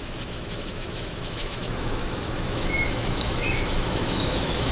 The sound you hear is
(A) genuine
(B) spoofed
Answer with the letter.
B